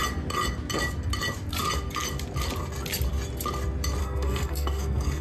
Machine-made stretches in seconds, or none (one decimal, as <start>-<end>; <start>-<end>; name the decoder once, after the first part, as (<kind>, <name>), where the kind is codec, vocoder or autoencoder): 4.0-5.2 (codec, SNAC)